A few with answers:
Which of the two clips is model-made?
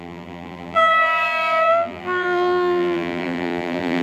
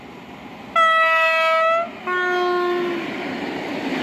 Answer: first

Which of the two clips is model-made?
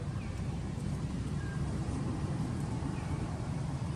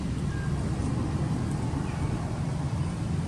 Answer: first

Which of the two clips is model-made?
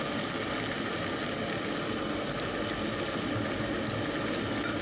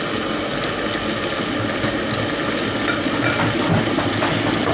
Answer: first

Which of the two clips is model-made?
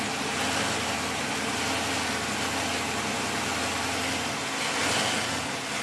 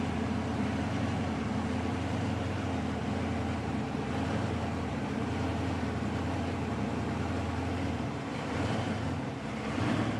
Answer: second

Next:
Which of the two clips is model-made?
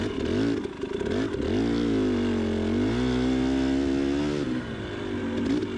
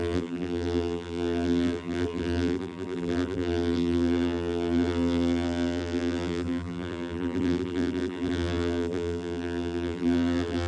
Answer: second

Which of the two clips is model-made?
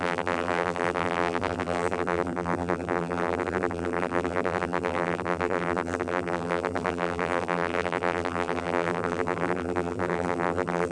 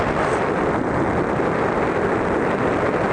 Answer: first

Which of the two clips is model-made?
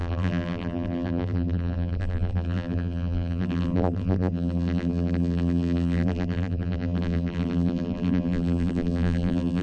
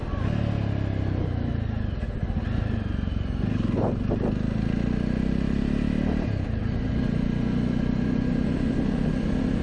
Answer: first